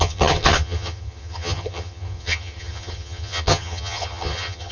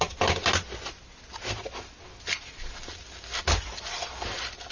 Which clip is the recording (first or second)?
second